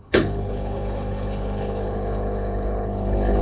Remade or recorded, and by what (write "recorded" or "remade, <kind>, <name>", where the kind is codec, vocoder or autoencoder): remade, codec, HILCodec